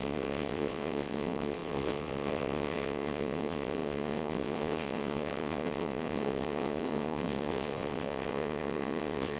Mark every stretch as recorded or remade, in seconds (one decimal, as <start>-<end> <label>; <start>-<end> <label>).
0.0-9.4 remade